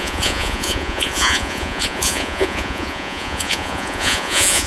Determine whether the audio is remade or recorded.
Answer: remade